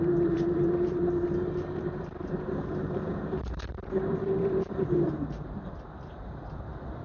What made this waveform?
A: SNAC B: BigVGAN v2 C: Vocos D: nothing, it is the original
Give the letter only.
B